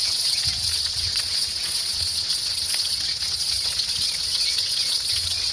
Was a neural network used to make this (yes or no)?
yes